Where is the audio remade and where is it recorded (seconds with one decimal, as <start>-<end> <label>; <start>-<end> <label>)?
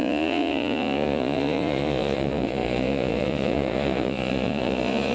0.0-5.1 remade